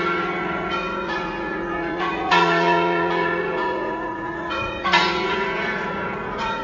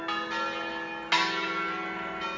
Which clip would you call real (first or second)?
second